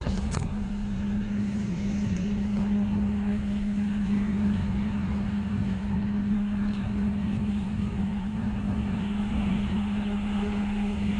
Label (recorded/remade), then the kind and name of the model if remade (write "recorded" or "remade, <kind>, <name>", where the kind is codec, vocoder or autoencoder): remade, codec, SNAC